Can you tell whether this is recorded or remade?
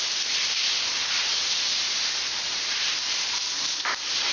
recorded